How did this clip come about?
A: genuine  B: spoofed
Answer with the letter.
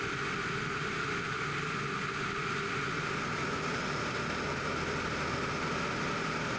A